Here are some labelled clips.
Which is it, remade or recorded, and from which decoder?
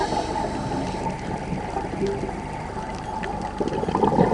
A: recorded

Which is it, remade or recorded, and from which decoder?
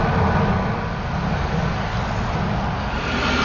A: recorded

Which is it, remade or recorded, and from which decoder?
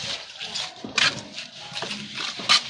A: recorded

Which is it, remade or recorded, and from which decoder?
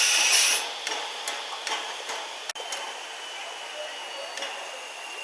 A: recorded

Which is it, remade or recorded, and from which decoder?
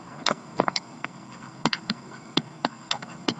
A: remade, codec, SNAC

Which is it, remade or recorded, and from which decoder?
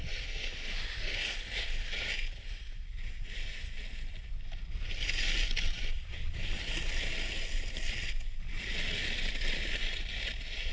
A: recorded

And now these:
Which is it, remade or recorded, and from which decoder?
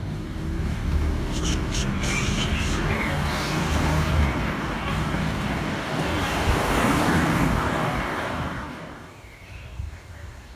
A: remade, codec, DAC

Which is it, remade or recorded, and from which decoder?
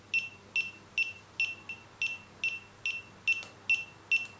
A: recorded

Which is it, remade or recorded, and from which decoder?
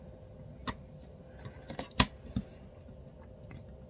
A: recorded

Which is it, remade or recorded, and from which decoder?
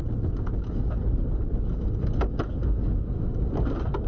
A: recorded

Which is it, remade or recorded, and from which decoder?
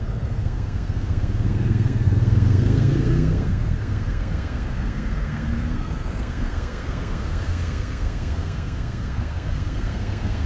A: remade, codec, SNAC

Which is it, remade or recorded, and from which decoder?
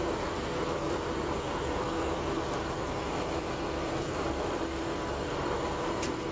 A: remade, vocoder, BigVGAN v2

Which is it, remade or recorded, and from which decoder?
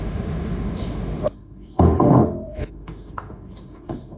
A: remade, autoencoder, DAC-VAE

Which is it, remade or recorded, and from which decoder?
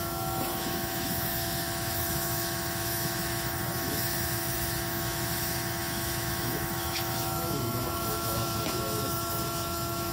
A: remade, autoencoder, DAC-VAE